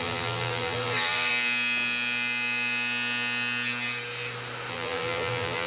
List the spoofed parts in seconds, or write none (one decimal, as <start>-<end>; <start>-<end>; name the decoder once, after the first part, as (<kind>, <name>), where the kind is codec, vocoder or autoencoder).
0.0-1.3 (vocoder, BigVGAN v2); 4.7-5.7

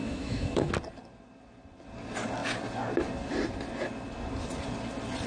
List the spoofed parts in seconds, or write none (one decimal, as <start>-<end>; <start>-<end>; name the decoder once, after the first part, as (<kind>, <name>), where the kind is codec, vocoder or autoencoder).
0.0-0.7 (autoencoder, DAC-VAE)